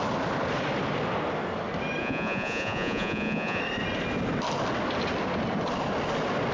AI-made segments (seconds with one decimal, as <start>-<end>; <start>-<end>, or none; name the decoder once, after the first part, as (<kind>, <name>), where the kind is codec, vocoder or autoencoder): 2.0-3.6 (vocoder, Vocos)